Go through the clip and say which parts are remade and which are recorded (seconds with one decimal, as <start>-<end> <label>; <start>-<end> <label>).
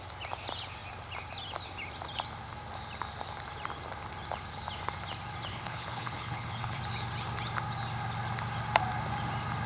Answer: 0.0-5.5 recorded; 5.5-6.8 remade; 6.8-9.7 recorded